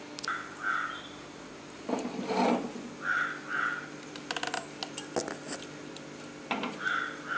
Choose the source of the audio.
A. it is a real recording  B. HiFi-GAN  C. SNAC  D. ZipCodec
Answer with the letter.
A